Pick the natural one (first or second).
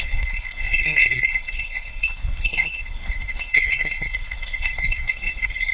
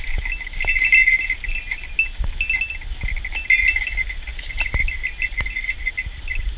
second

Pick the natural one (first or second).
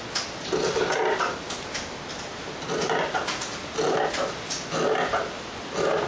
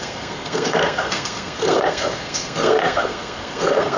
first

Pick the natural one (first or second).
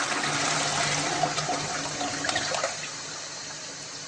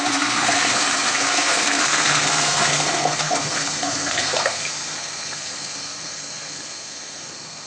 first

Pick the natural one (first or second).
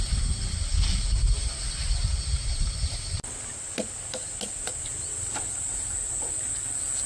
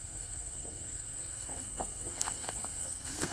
first